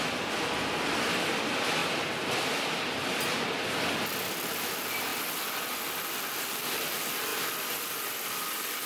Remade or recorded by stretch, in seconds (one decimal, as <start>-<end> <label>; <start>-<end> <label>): 0.0-1.8 recorded; 1.8-3.7 remade; 3.7-5.1 recorded; 5.1-6.0 remade; 6.0-7.3 recorded; 7.3-8.9 remade